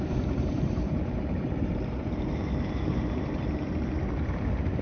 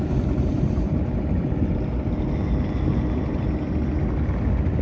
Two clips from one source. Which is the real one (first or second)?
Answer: second